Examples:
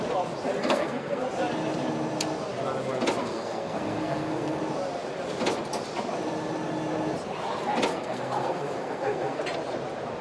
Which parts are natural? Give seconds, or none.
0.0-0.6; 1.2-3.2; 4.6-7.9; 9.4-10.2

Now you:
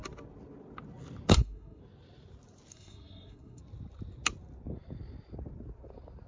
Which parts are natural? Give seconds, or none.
0.0-1.3; 1.8-2.7; 3.6-6.3

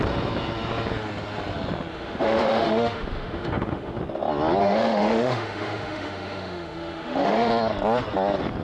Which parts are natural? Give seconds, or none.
0.0-1.9; 4.0-4.6; 7.5-8.6

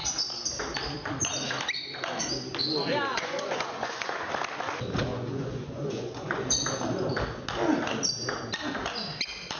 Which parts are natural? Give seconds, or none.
0.0-3.1; 4.3-5.1; 6.4-9.6

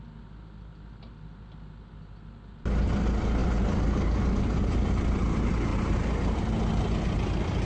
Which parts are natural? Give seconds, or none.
0.0-3.4; 4.9-5.7; 6.4-7.7

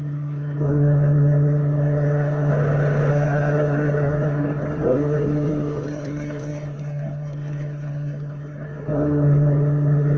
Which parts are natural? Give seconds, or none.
2.5-3.1